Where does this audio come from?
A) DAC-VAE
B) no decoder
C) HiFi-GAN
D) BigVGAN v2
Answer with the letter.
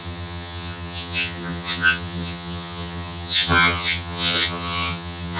C